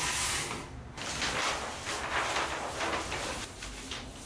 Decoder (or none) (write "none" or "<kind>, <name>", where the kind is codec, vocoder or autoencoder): none